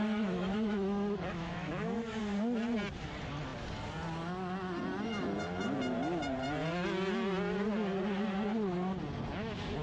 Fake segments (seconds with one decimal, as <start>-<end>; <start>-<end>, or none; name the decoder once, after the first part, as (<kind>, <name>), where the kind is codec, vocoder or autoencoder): 0.0-2.2 (autoencoder, DAC-VAE)